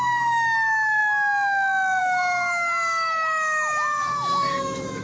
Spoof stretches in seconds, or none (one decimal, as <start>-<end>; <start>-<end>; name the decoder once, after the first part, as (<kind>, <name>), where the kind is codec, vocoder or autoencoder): 0.0-1.0 (autoencoder, DAC-VAE); 2.0-5.0